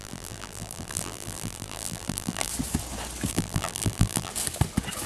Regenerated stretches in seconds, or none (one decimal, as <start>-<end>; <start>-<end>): 0.0-2.5; 3.3-4.3